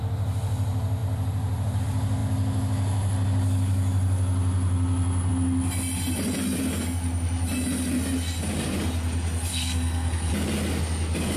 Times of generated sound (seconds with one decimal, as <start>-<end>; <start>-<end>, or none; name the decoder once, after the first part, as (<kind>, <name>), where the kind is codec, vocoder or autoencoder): 9.5-10.3 (codec, SNAC)